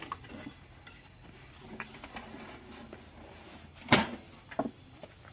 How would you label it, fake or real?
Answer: real